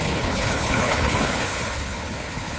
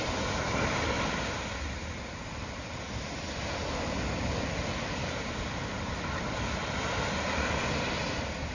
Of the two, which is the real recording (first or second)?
second